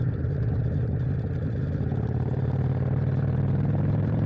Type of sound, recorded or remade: remade